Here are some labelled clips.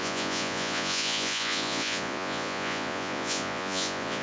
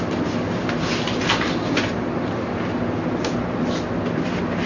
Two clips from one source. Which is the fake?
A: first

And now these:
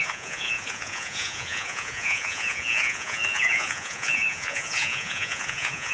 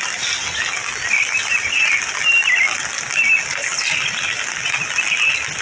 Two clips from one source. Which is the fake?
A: first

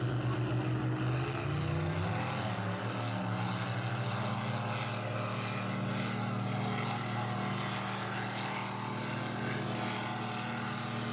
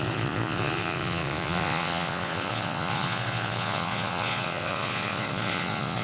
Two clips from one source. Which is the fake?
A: second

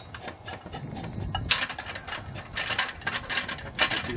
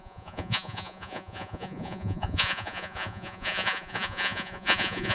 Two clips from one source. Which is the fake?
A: second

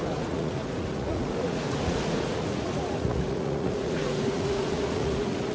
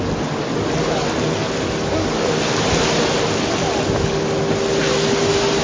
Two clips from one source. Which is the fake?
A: first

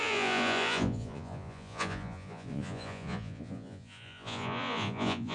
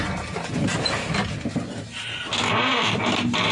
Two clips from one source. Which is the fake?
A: first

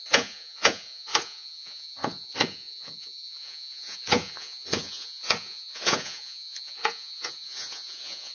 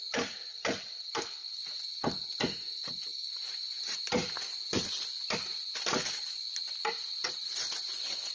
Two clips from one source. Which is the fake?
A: first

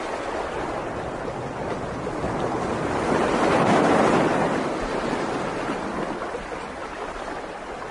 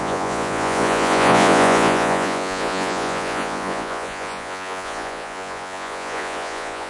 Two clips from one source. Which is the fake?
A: second